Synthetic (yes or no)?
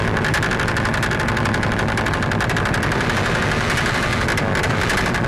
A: no